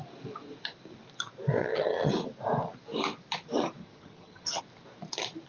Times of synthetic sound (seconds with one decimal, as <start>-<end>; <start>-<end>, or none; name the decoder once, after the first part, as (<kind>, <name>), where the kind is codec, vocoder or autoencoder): 1.6-2.1 (vocoder, HiFi-GAN); 3.8-4.6